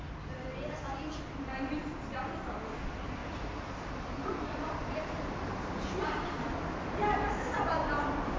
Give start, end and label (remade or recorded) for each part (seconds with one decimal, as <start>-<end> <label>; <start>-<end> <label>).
0.0-3.2 recorded; 3.2-6.5 remade; 6.5-7.8 recorded; 7.8-8.4 remade